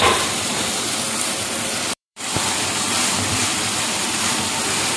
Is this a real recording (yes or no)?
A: no